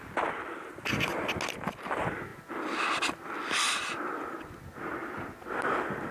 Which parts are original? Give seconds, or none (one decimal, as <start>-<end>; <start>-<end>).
0.0-6.1